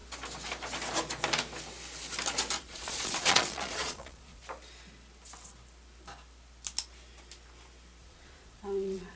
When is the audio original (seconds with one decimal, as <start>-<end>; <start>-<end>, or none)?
0.0-2.6; 4.4-8.0